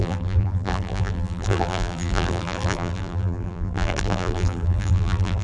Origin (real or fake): fake